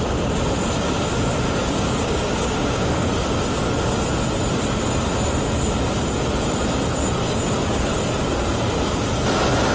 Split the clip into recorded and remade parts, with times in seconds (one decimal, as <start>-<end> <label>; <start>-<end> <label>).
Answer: 0.0-1.6 recorded; 1.6-3.1 remade; 3.1-9.7 recorded